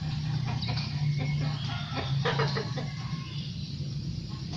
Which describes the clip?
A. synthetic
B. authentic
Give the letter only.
B